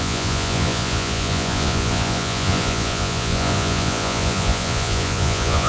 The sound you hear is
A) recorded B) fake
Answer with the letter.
B